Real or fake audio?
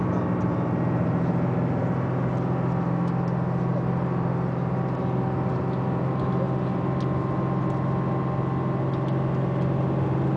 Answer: real